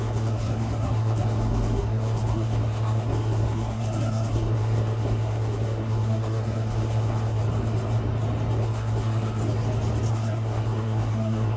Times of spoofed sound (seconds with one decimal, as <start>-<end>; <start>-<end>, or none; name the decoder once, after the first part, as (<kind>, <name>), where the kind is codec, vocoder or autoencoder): 0.0-7.4 (codec, SNAC); 8.5-9.4; 10.1-11.6